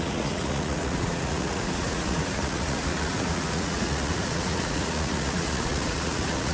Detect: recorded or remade remade